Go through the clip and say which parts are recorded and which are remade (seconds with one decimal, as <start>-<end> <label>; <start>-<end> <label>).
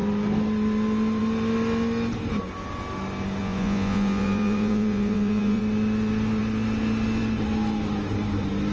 0.0-3.4 recorded; 3.4-5.6 remade; 5.6-8.7 recorded